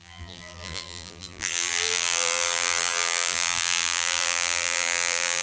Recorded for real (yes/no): no